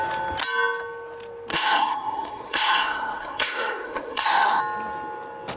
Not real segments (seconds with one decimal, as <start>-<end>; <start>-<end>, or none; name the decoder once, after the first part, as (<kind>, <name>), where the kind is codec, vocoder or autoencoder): 1.5-4.6 (codec, SNAC)